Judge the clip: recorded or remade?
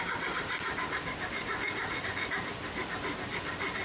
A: recorded